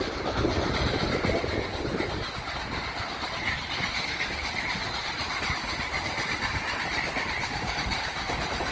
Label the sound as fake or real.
real